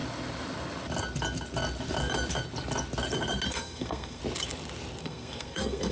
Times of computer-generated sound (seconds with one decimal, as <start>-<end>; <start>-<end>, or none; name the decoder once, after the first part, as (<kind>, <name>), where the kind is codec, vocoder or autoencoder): 3.5-4.2 (codec, SNAC); 5.0-5.9